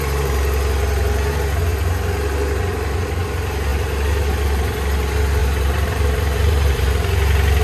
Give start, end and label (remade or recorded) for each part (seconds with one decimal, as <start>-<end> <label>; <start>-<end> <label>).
0.0-5.4 recorded; 5.4-6.9 remade; 6.9-7.6 recorded